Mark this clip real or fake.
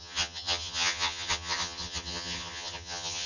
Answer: fake